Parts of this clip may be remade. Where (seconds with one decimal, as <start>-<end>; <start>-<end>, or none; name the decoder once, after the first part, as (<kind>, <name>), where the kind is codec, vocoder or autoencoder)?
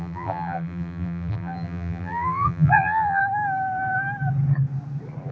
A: 0.0-3.2 (vocoder, BigVGAN v2)